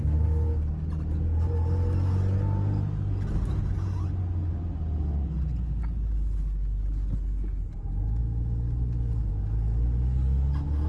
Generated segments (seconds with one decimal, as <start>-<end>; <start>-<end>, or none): none